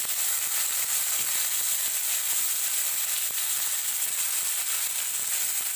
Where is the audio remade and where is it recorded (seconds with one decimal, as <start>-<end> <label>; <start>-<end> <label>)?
0.0-2.0 remade; 2.0-5.8 recorded